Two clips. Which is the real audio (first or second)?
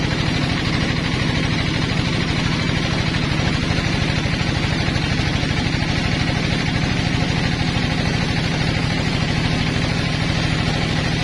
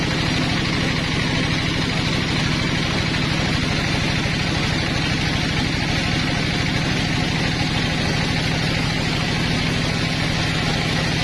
second